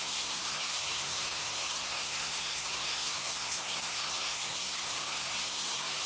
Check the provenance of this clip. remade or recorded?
remade